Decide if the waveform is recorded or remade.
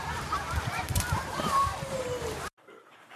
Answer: remade